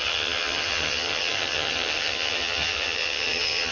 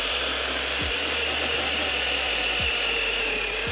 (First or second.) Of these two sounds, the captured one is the second